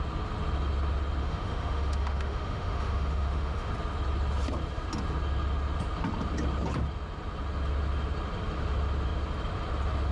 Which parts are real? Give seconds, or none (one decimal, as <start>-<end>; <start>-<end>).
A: 0.0-1.2; 3.7-10.1